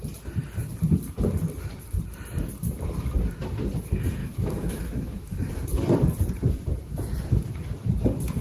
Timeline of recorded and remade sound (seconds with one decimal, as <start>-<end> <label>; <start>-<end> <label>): 0.0-4.2 recorded; 4.2-5.5 remade; 5.5-8.4 recorded